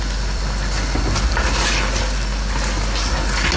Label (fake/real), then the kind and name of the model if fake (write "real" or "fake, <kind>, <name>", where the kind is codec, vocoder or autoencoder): real